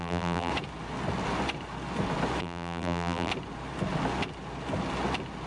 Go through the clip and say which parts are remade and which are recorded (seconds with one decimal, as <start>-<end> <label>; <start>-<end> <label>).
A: 0.0-0.5 remade; 0.5-2.4 recorded; 2.4-3.3 remade; 3.3-5.5 recorded